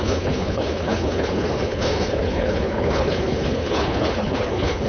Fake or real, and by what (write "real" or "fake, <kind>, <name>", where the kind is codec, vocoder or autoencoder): fake, codec, HILCodec